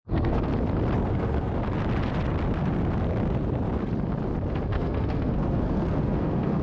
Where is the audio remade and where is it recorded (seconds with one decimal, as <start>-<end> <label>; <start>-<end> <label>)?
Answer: 0.0-0.5 remade; 0.5-1.1 recorded; 1.1-1.5 remade; 1.5-4.5 recorded; 4.5-6.6 remade